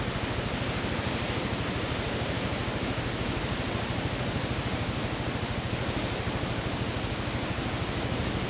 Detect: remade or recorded recorded